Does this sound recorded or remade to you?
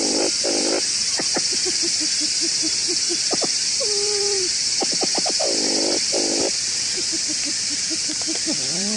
remade